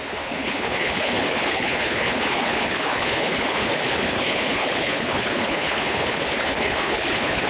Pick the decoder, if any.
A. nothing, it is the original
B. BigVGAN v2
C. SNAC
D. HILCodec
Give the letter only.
D